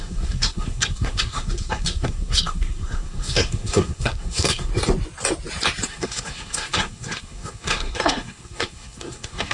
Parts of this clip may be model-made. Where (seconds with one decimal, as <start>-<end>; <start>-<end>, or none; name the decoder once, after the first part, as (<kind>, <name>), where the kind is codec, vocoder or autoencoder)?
0.0-4.7 (codec, SNAC); 5.9-9.5